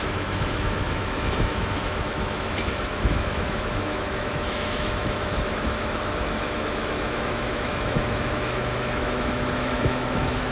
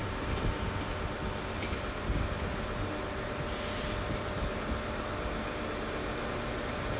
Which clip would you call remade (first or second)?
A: first